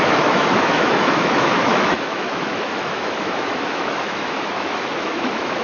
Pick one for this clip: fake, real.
fake